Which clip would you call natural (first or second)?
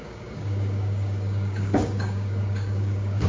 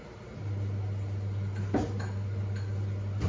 second